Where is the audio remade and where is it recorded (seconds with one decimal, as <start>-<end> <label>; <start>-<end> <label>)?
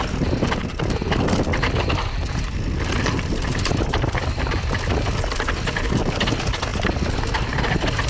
0.0-8.1 recorded